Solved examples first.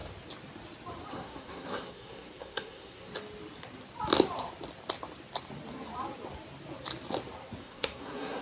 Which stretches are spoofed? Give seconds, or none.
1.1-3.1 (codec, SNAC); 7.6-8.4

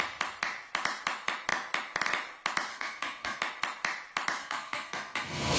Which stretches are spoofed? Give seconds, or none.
2.7-3.4 (codec, SNAC); 4.4-5.6

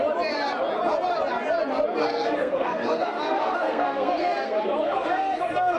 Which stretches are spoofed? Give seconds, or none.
2.0-5.8 (codec, SNAC)

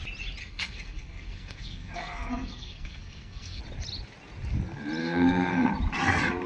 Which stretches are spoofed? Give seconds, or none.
0.4-3.6 (codec, SNAC); 5.0-5.7